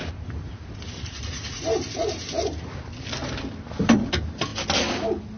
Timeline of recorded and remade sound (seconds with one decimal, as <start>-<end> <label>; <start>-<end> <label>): 0.0-4.5 remade; 4.5-5.4 recorded

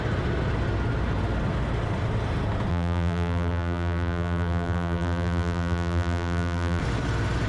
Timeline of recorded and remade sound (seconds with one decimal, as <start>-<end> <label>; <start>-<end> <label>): 0.0-2.7 recorded; 2.7-6.8 remade; 6.8-7.5 recorded